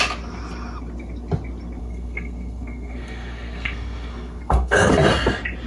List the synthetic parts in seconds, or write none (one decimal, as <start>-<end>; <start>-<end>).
1.8-4.9